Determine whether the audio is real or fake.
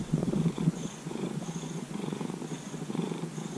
fake